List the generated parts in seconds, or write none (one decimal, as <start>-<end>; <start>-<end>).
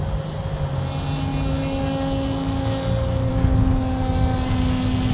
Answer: none